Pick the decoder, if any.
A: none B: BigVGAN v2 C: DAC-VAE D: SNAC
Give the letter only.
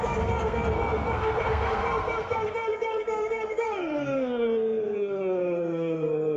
D